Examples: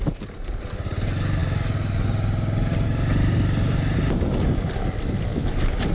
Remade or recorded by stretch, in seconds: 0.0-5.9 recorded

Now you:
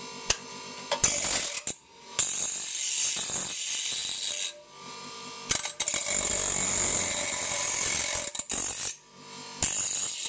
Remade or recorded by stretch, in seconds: 0.0-10.3 recorded

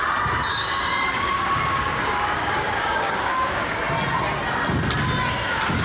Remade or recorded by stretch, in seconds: 0.0-0.5 recorded; 0.5-3.8 remade; 3.8-5.8 recorded